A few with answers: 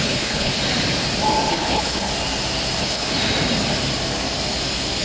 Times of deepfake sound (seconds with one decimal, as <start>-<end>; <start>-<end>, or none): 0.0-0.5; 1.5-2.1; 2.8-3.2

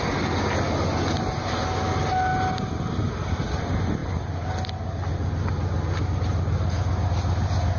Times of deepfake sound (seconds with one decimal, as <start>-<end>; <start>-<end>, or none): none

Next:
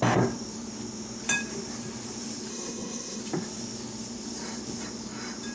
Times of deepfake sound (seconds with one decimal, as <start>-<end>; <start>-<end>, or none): 2.5-3.2